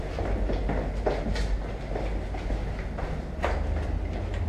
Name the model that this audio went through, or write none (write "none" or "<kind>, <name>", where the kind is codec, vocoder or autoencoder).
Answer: none